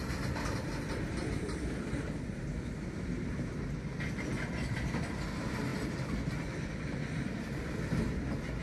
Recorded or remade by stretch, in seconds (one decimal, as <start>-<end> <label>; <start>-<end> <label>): 0.0-8.6 recorded